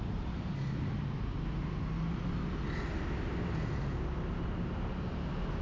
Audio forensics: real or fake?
real